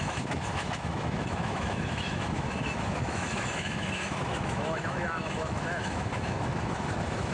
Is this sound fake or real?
fake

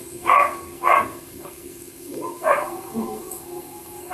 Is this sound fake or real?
fake